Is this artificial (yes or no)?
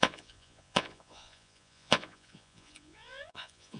yes